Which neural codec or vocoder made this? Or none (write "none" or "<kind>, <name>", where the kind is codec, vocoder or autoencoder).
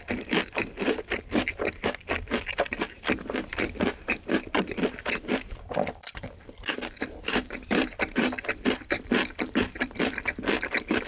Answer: vocoder, BigVGAN v2